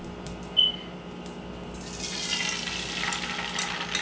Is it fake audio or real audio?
real